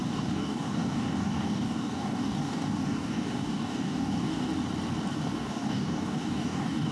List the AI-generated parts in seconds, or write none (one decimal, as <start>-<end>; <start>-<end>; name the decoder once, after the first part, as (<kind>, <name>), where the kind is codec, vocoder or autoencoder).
0.0-4.5 (codec, DAC); 5.3-6.9